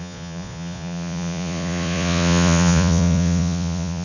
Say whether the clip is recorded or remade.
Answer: remade